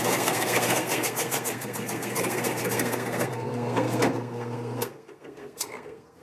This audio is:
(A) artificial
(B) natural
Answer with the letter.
A